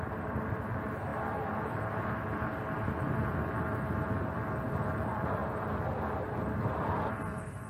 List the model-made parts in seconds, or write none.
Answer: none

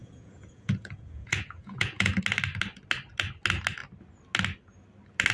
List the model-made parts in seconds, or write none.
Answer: 0.0-2.1

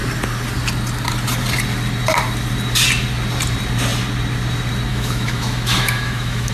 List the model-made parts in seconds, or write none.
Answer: 4.9-6.5

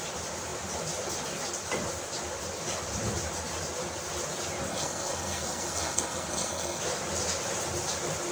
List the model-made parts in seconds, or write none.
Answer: 4.7-6.8

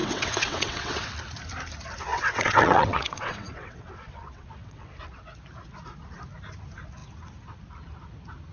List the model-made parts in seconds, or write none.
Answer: 0.0-1.1; 2.1-5.0

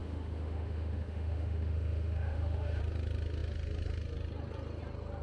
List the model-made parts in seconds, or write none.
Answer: 0.0-2.8